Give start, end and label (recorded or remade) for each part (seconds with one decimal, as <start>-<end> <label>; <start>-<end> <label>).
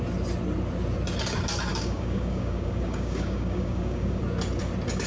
0.0-1.7 recorded; 1.7-4.2 remade; 4.2-5.1 recorded